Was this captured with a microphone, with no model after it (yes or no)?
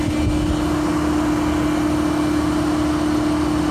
yes